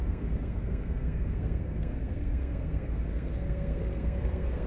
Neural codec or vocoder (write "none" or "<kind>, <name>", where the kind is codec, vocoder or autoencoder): codec, SNAC